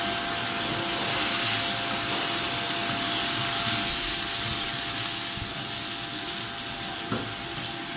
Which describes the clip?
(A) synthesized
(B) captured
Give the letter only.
B